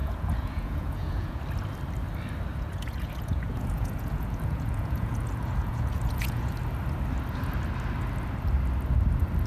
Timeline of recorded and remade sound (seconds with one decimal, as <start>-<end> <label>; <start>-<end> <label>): 0.0-1.4 remade; 1.4-2.5 recorded; 2.5-6.5 remade; 6.5-9.5 recorded